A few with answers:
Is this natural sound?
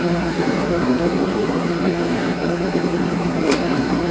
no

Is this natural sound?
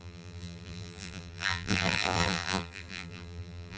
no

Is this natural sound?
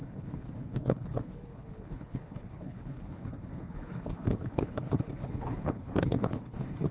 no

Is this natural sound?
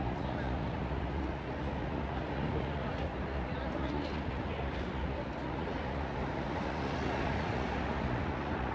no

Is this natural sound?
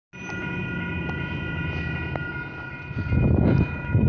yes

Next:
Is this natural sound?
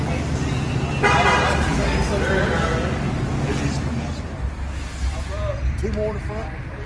yes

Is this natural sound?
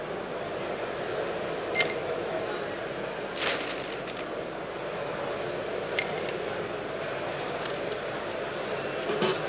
yes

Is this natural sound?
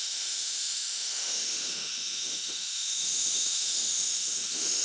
no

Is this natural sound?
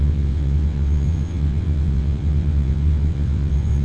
no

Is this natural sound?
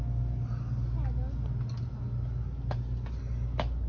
yes